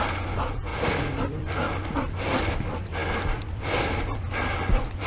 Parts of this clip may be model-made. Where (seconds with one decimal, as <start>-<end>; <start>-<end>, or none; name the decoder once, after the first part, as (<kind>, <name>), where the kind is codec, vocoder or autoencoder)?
0.7-1.5 (vocoder, BigVGAN v2)